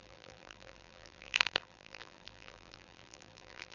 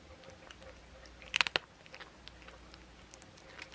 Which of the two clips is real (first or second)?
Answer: second